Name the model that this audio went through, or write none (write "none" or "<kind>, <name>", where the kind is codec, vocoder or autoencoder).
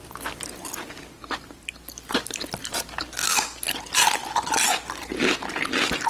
none